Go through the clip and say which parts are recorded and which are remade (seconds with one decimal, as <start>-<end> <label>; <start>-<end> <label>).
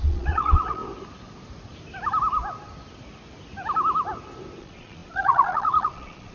0.0-0.8 remade; 0.8-4.6 recorded; 4.6-6.3 remade